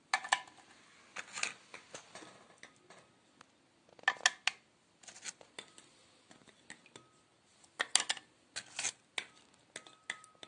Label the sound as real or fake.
real